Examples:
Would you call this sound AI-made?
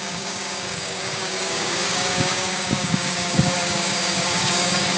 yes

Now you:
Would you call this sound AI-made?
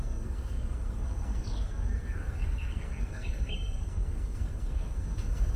yes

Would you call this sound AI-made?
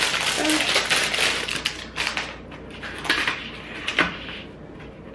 no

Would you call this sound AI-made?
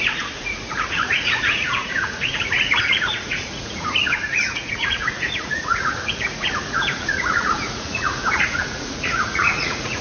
yes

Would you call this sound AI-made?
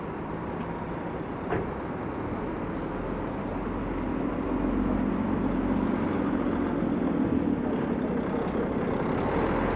no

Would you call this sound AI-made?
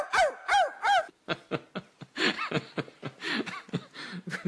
no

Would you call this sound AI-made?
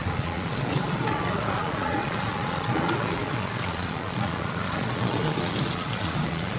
yes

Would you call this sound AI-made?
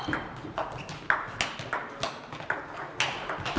no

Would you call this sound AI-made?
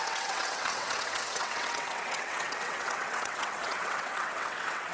yes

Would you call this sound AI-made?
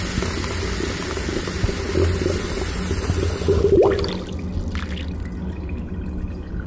no